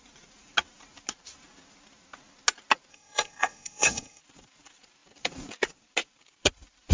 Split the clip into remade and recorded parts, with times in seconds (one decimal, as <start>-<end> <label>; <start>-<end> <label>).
0.0-2.9 recorded; 2.9-4.2 remade; 4.2-6.9 recorded